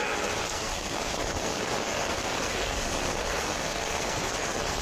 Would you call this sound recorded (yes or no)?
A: no